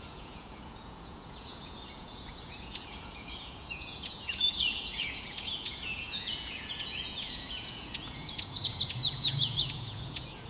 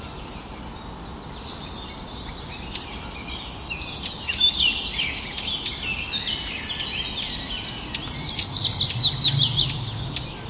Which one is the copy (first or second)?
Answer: first